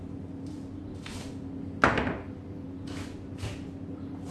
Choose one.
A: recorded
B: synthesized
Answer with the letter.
A